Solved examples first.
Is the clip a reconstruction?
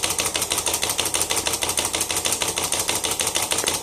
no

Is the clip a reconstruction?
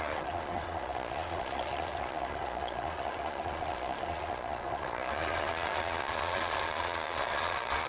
yes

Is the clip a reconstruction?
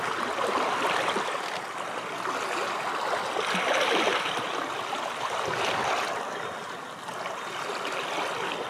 no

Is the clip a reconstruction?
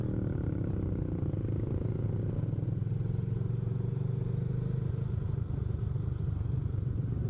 no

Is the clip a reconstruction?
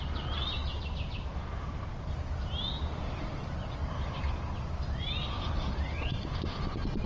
no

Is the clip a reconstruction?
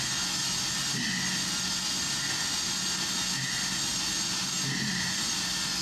no